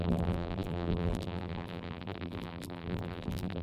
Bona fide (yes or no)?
no